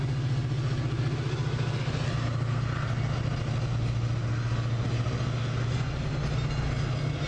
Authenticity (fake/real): real